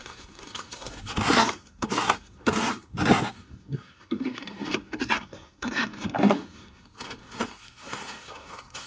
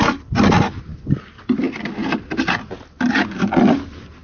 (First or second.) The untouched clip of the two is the second